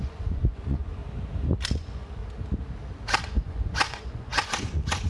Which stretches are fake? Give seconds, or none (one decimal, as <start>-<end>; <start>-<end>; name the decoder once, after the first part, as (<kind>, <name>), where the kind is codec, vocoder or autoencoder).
0.0-1.0 (vocoder, Vocos); 1.7-2.2; 3.2-5.1